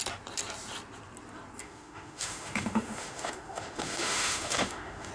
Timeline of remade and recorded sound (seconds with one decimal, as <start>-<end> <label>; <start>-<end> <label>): 0.0-1.6 recorded; 1.6-5.1 remade